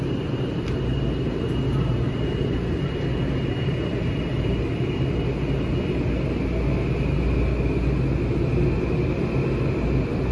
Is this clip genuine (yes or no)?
yes